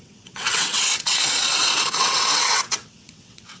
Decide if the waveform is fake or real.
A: fake